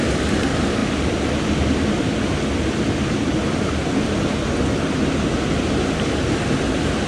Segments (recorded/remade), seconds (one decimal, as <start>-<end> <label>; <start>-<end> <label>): 0.0-7.1 recorded